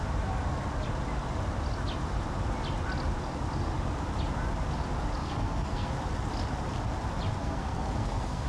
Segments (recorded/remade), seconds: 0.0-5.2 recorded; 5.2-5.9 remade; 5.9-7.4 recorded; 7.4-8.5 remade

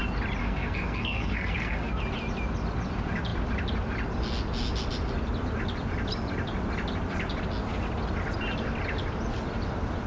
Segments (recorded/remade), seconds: 0.0-0.4 recorded; 0.4-1.9 remade; 1.9-10.1 recorded

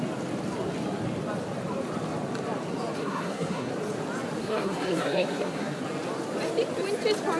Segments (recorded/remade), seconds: 0.0-3.0 recorded; 3.0-3.7 remade; 3.7-4.4 recorded; 4.4-5.8 remade; 5.8-7.4 recorded

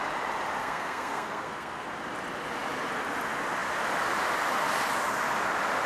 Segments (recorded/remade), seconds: 0.0-0.6 recorded; 0.6-1.9 remade; 1.9-5.9 recorded

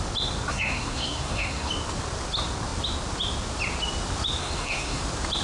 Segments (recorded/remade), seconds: 0.0-0.5 recorded; 0.5-1.7 remade; 1.7-4.4 recorded; 4.4-5.0 remade; 5.0-5.4 recorded

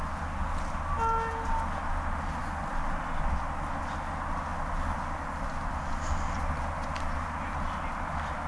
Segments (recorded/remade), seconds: 0.0-8.5 recorded